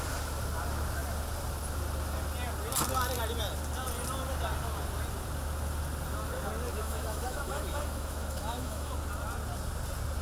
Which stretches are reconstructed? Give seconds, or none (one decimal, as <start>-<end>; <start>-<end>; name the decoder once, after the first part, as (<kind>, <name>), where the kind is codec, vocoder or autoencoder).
6.7-8.9 (autoencoder, DAC-VAE)